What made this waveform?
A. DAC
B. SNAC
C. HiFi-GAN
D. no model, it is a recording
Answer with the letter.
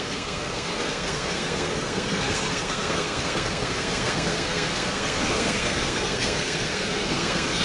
B